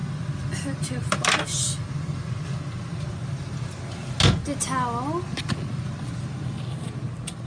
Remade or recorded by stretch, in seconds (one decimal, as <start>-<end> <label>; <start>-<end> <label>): 0.0-2.4 remade; 2.4-7.5 recorded